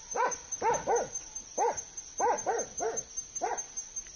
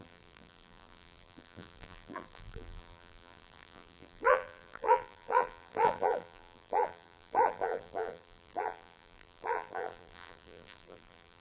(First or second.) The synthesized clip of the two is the second